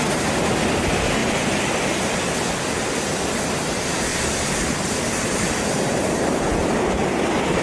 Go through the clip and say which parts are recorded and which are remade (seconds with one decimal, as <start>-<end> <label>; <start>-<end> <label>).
0.0-1.2 recorded; 1.2-2.2 remade; 2.2-4.1 recorded; 4.1-6.3 remade; 6.3-7.6 recorded